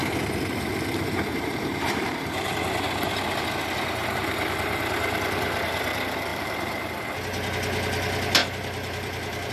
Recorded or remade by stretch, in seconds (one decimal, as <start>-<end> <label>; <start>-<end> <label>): 0.0-1.3 recorded; 1.3-2.5 remade; 2.5-6.3 recorded; 6.3-6.9 remade; 6.9-8.4 recorded; 8.4-9.5 remade

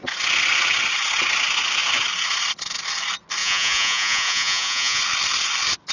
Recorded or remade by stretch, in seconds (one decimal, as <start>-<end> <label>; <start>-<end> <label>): 0.0-3.4 recorded; 3.4-5.0 remade; 5.0-5.9 recorded

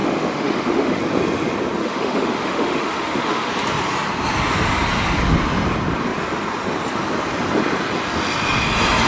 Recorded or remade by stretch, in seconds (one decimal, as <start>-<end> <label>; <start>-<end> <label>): 0.0-1.0 remade; 1.0-1.8 recorded; 1.8-3.5 remade; 3.5-9.1 recorded

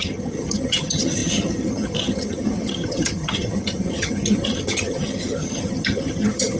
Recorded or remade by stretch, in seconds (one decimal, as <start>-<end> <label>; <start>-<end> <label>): 0.0-6.6 remade

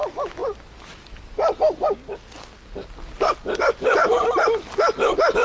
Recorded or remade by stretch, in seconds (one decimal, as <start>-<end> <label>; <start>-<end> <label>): 0.0-5.4 recorded

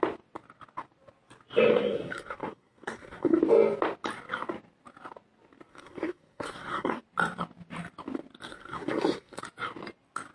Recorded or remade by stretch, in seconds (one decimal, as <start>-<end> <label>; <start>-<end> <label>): 0.0-1.7 recorded; 1.7-3.4 remade; 3.4-5.7 recorded; 5.7-7.0 remade; 7.0-8.5 recorded; 8.5-9.4 remade; 9.4-10.3 recorded

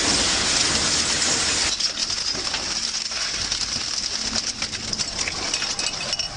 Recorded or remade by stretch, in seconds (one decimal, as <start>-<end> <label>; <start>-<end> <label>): 0.0-6.4 recorded

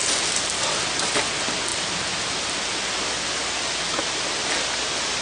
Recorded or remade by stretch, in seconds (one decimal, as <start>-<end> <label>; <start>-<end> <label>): 0.0-5.2 recorded